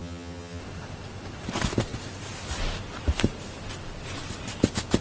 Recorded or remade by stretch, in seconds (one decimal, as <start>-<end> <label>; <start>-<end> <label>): 0.0-0.6 remade; 0.6-5.0 recorded